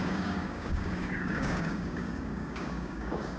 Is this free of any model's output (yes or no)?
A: no